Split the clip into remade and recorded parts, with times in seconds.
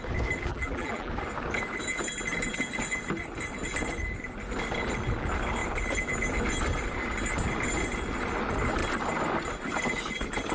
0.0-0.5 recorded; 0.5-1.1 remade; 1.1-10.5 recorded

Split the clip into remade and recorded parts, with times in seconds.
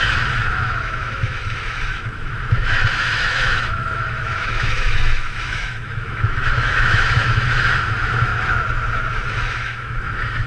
0.0-8.3 remade; 8.3-9.1 recorded; 9.1-10.5 remade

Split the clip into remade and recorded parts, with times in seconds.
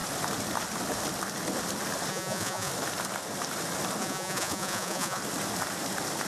0.0-2.1 recorded; 2.1-2.7 remade; 2.7-4.0 recorded; 4.0-5.2 remade; 5.2-6.3 recorded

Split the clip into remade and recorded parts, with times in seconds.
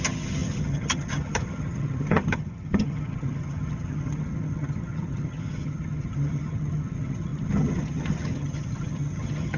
0.0-9.6 remade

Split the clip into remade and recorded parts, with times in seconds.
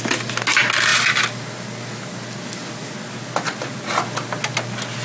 0.0-5.0 recorded